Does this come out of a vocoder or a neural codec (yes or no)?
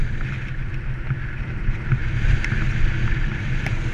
no